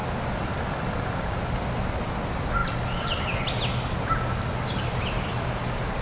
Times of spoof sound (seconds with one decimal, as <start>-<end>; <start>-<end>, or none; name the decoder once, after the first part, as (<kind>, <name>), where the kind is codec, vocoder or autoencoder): none